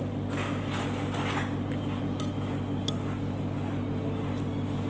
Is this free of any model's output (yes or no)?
yes